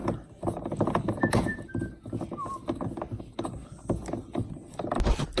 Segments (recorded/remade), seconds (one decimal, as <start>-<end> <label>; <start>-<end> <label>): 0.0-5.4 recorded